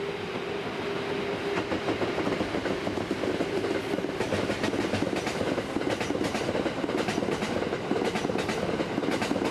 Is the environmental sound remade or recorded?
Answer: recorded